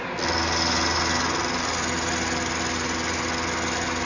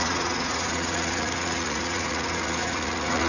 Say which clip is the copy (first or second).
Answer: second